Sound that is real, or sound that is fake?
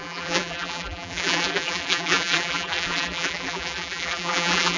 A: fake